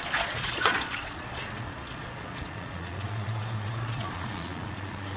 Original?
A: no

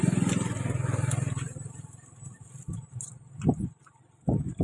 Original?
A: yes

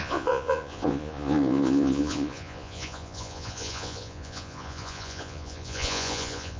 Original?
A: no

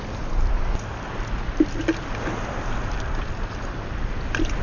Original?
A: yes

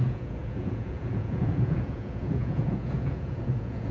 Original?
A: no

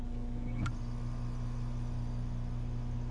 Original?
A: yes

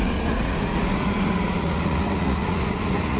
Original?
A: no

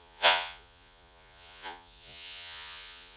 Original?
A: no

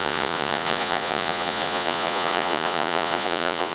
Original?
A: no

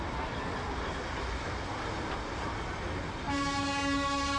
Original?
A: yes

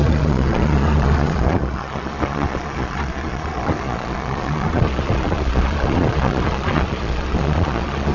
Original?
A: no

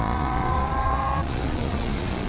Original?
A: no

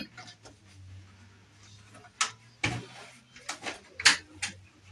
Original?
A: yes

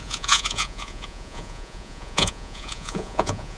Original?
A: no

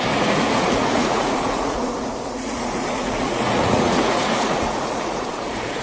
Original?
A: no